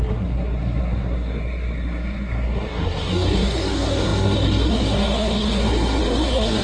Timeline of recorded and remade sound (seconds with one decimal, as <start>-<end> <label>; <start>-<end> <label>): 0.0-6.6 remade